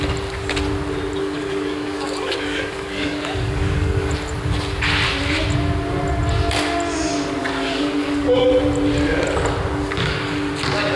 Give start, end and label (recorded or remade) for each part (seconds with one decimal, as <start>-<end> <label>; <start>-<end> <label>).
0.0-1.2 recorded; 1.2-4.1 remade; 4.1-7.4 recorded; 7.4-8.5 remade; 8.5-9.7 recorded; 9.7-10.5 remade; 10.5-11.0 recorded